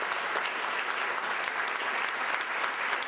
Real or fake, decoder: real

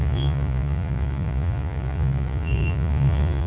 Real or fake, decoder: fake, vocoder, Vocos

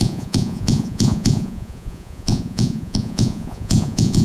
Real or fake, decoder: fake, vocoder, Vocos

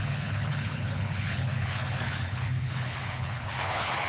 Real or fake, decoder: fake, codec, HILCodec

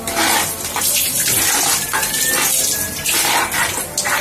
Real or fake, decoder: real